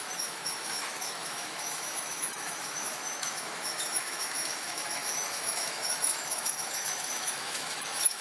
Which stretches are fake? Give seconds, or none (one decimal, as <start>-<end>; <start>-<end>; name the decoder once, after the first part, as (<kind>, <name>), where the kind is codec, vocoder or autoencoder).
0.0-8.2 (autoencoder, DAC-VAE)